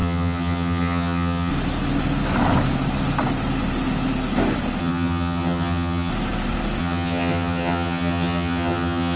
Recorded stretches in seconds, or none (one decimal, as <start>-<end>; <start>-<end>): 1.5-4.8; 6.1-6.8